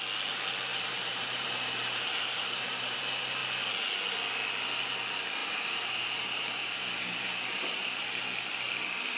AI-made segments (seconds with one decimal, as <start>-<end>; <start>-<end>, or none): 0.7-3.0; 5.4-8.2